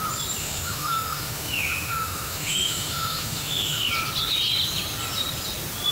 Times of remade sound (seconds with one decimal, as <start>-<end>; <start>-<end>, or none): 0.4-3.9